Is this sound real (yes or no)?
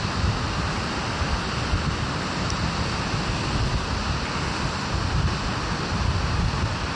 yes